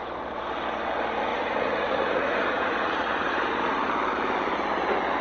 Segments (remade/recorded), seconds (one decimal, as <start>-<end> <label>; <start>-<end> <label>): 0.0-1.3 recorded; 1.3-3.9 remade; 3.9-5.2 recorded